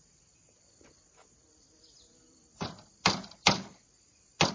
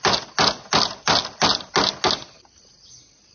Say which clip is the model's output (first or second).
first